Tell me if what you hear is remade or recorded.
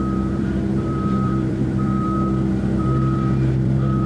remade